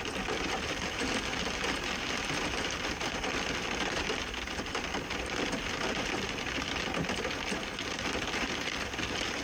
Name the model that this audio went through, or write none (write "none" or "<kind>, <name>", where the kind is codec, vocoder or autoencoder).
vocoder, BigVGAN v2